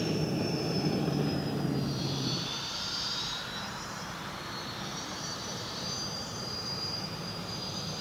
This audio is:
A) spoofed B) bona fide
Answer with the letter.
A